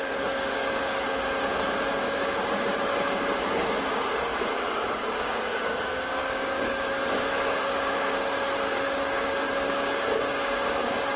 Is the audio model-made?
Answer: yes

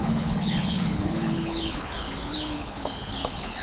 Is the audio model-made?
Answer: yes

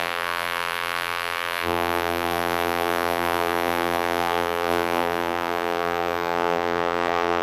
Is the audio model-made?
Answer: yes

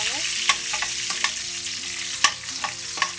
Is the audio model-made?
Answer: no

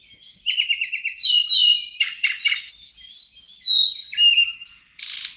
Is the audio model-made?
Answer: no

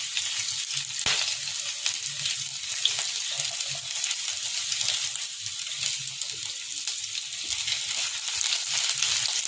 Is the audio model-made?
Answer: no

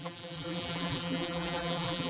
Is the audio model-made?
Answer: yes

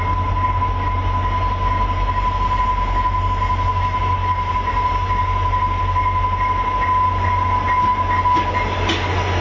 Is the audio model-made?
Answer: no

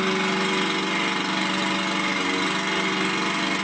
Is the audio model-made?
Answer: no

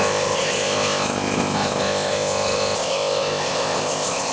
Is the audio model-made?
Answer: yes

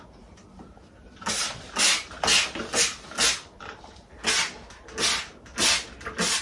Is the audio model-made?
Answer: no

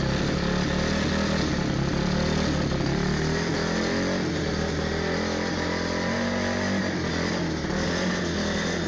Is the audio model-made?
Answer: no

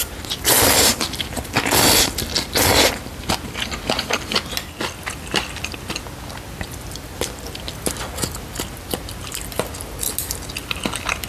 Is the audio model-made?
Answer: no